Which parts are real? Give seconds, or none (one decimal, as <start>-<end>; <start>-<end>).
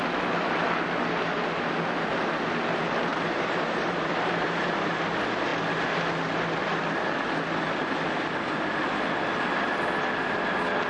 0.0-3.1; 5.0-10.9